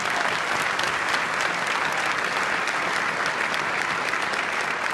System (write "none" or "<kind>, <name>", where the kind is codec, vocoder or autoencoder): none